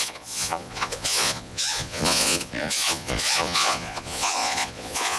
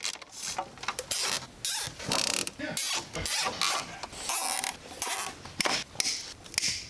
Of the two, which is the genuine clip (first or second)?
second